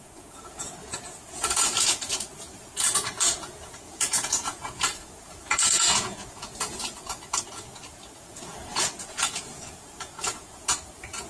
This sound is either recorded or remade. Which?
remade